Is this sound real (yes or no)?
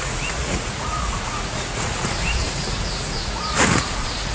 no